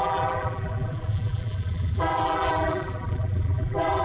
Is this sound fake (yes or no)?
yes